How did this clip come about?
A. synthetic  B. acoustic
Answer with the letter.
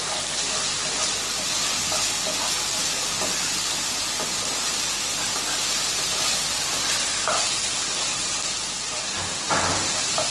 B